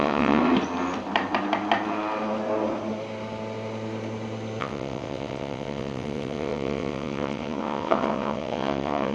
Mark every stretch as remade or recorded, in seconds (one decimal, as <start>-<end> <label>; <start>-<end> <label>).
0.0-0.4 remade; 0.4-4.6 recorded; 4.6-9.1 remade